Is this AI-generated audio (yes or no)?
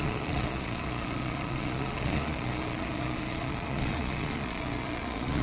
yes